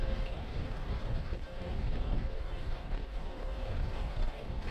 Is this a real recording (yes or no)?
no